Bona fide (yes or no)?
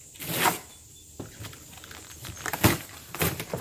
yes